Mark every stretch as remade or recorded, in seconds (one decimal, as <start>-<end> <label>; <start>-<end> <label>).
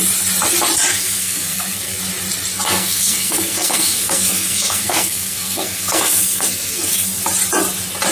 0.0-0.9 recorded; 0.9-2.0 remade; 2.0-2.5 recorded; 2.5-7.2 remade; 7.2-8.1 recorded